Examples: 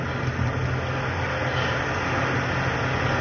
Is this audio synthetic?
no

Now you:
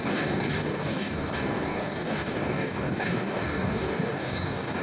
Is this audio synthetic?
yes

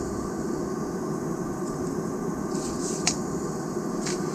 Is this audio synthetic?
no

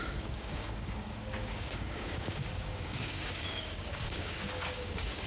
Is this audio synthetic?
yes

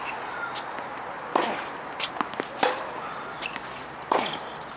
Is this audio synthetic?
no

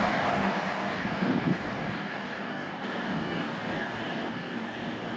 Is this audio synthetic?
yes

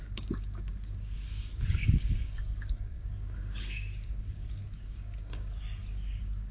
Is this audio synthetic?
yes